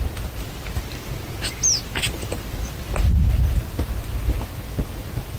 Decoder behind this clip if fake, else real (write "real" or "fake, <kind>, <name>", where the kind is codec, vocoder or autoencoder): real